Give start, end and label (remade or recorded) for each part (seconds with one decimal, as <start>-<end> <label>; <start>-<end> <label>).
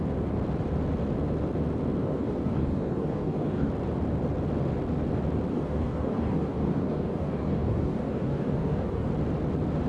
0.0-2.0 recorded; 2.0-3.7 remade; 3.7-5.5 recorded; 5.5-9.1 remade; 9.1-9.9 recorded